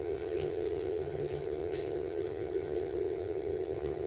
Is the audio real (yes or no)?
no